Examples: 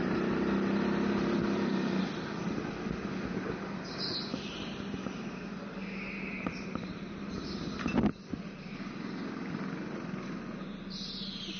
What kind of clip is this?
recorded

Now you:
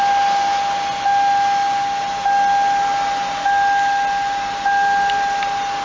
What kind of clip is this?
recorded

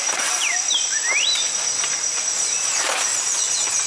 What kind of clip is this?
recorded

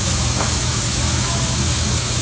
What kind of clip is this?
remade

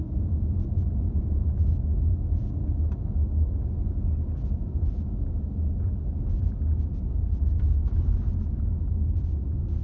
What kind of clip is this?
recorded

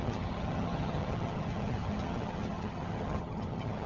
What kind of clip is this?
remade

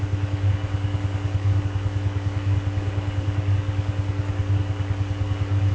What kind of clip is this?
remade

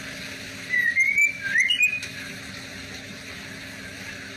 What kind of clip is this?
recorded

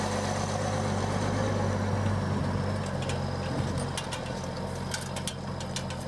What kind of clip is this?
recorded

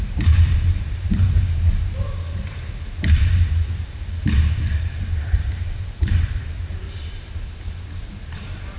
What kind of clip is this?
remade